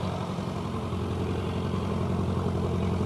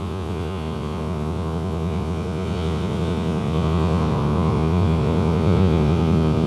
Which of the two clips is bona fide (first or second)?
first